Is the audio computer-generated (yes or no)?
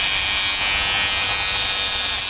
no